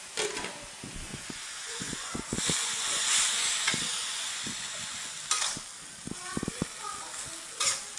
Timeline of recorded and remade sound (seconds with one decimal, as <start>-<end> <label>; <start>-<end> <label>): 0.0-1.1 recorded; 1.1-5.1 remade; 5.1-8.0 recorded